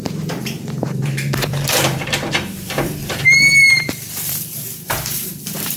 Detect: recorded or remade remade